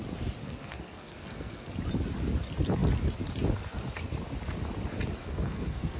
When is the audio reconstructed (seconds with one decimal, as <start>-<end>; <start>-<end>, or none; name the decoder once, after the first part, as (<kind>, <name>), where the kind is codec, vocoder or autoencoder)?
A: 0.4-1.7 (codec, SNAC); 5.2-6.0